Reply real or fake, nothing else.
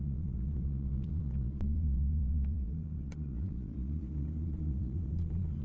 fake